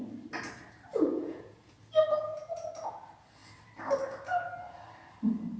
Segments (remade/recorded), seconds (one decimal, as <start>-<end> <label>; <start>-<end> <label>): 0.0-0.9 recorded; 0.9-1.7 remade; 1.7-2.3 recorded; 2.3-2.9 remade; 2.9-5.6 recorded